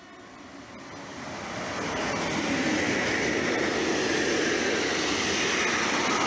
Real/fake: real